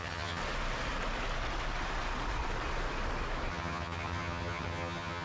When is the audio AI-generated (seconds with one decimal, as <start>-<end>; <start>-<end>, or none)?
0.0-0.4; 3.5-5.2